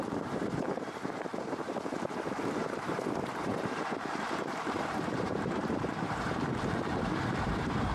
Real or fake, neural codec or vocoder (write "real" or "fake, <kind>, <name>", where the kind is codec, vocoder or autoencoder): fake, vocoder, BigVGAN v2